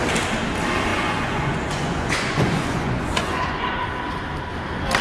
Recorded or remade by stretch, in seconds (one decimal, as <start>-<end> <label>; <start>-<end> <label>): 0.0-0.9 recorded; 0.9-3.9 remade; 3.9-5.0 recorded